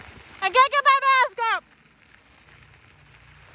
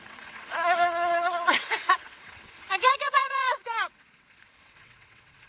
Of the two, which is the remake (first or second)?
second